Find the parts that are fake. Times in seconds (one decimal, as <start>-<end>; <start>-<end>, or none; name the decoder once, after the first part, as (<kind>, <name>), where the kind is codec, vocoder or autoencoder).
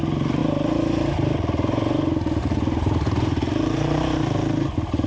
0.0-0.4 (vocoder, BigVGAN v2); 2.4-5.1